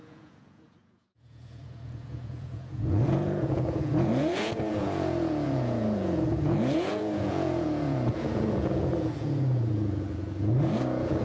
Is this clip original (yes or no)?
no